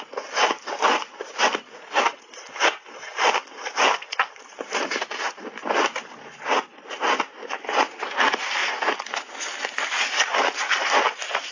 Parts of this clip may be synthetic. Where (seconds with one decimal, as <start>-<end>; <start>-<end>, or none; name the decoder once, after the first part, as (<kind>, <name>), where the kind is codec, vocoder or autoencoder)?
none